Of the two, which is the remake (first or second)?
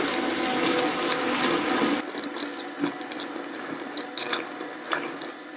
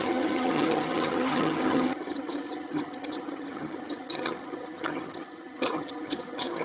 second